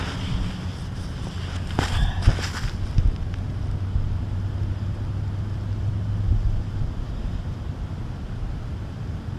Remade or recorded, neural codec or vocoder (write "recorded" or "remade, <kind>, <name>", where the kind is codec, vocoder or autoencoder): recorded